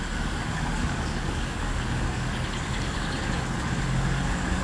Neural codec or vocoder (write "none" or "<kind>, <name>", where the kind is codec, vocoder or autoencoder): codec, DAC